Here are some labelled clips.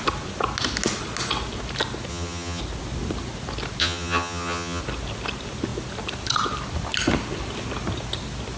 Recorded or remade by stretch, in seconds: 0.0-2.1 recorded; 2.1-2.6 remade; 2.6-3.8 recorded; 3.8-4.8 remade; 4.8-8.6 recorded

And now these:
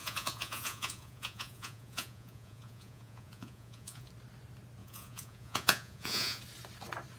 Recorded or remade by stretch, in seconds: 0.0-4.1 remade; 4.1-4.8 recorded; 4.8-6.4 remade; 6.4-7.2 recorded

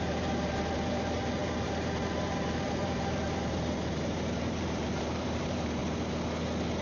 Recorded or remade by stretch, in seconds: 0.0-5.8 remade; 5.8-6.8 recorded

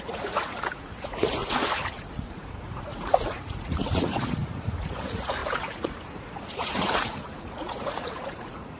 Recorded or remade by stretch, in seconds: 0.0-8.8 remade

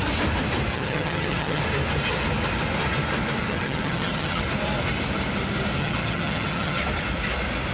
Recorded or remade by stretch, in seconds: 0.0-0.7 recorded; 0.7-1.6 remade; 1.6-3.4 recorded; 3.4-4.4 remade; 4.4-5.8 recorded; 5.8-6.8 remade; 6.8-7.7 recorded

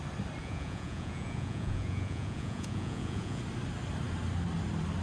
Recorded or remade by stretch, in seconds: 0.0-0.4 recorded; 0.4-3.4 remade; 3.4-5.0 recorded

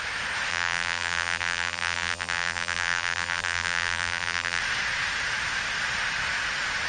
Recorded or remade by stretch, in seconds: 0.0-0.5 recorded; 0.5-4.6 remade; 4.6-6.9 recorded

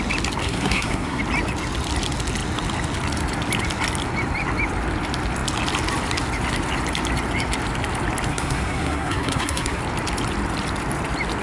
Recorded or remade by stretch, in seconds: 0.0-0.4 recorded; 0.4-1.2 remade; 1.2-8.3 recorded; 8.3-9.8 remade; 9.8-11.4 recorded